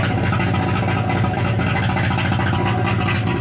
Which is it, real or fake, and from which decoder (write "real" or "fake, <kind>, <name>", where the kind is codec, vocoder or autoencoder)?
real